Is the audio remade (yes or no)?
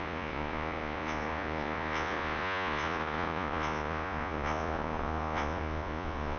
yes